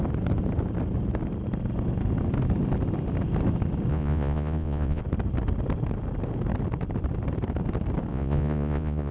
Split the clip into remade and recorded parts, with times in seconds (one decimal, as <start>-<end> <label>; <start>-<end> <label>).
0.0-3.9 recorded; 3.9-5.0 remade; 5.0-8.1 recorded; 8.1-9.1 remade